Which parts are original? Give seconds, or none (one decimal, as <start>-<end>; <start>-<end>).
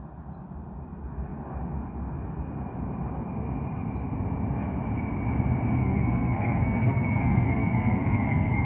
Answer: 0.0-5.8